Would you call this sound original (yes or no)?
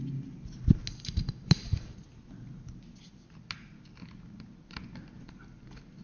yes